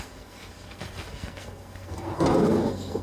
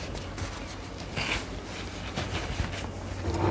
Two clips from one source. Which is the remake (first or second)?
first